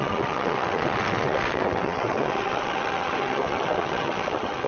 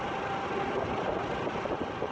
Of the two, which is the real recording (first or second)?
second